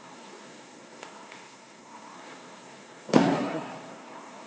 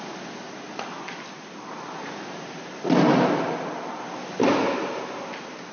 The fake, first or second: first